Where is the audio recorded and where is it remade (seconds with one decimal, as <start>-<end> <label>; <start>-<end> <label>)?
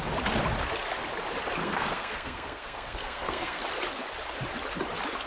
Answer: 0.0-1.6 recorded; 1.6-3.6 remade; 3.6-5.3 recorded